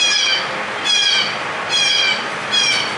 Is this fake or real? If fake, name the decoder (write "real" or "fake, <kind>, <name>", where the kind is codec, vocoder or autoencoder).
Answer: real